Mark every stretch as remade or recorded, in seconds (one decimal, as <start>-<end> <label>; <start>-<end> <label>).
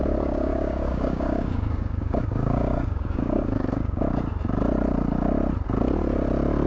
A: 0.0-4.0 remade; 4.0-6.7 recorded